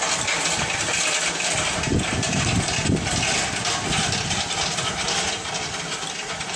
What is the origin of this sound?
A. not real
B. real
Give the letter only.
B